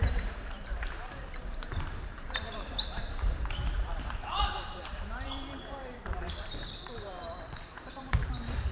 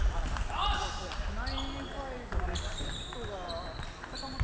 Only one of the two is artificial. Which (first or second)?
first